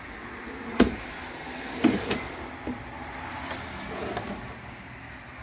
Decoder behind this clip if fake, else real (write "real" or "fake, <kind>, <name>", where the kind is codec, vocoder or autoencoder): real